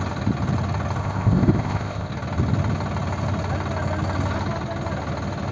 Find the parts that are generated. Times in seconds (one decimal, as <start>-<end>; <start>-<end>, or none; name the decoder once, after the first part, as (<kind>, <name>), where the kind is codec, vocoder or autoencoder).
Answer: 1.0-2.1 (codec, ZipCodec)